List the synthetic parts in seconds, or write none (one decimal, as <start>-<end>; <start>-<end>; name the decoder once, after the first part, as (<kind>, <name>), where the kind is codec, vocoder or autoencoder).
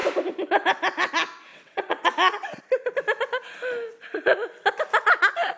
1.5-2.6 (vocoder, WaveNeXt)